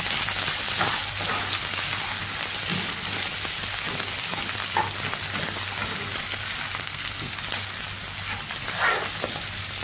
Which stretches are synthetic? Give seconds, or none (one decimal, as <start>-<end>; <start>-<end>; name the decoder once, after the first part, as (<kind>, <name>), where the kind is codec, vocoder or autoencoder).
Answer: 6.8-7.3 (codec, SNAC)